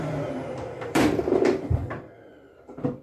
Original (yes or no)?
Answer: no